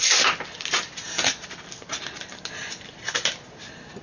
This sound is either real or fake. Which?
real